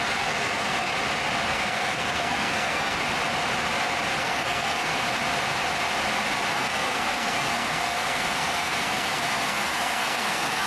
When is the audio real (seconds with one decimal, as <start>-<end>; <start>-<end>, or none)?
0.9-1.5; 3.0-4.2; 4.9-6.5